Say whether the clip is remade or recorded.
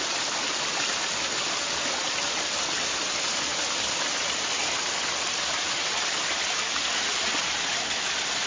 recorded